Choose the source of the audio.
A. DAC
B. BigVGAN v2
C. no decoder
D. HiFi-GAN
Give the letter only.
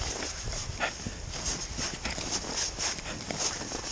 C